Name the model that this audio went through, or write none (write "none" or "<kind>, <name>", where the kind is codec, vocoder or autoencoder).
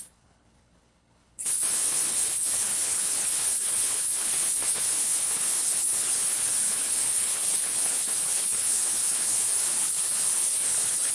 codec, HILCodec